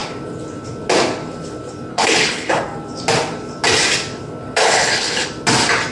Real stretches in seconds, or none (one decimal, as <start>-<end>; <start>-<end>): 0.0-1.9; 2.6-4.6; 5.3-5.9